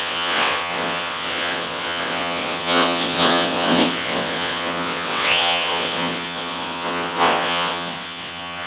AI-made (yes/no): yes